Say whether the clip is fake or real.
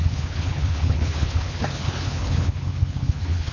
fake